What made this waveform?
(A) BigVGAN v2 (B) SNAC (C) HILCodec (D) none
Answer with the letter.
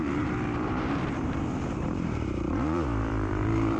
A